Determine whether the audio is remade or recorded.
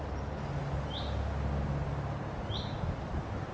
recorded